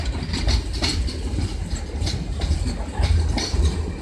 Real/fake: real